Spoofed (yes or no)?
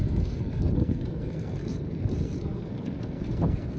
yes